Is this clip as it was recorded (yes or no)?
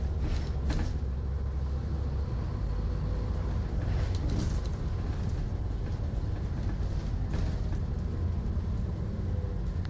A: yes